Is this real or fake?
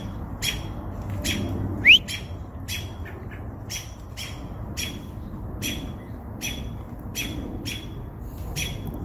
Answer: real